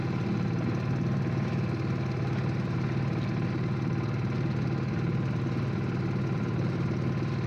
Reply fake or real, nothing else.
real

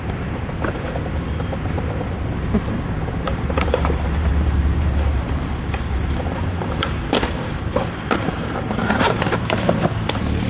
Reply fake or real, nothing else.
fake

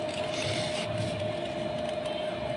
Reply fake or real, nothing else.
fake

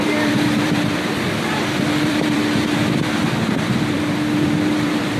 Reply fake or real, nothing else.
fake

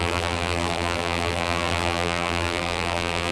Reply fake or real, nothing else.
fake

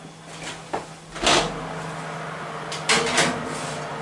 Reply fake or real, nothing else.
real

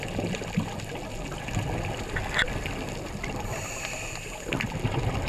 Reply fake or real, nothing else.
real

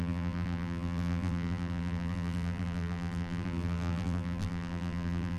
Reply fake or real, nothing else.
fake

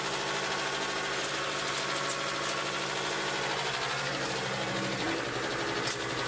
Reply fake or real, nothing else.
real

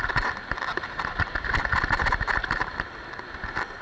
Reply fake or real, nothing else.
real